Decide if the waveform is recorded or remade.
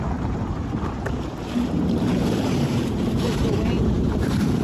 remade